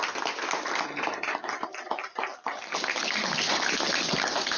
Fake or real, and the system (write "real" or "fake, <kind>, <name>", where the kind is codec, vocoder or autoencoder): real